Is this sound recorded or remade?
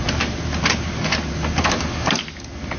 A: recorded